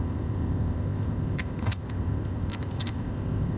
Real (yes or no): no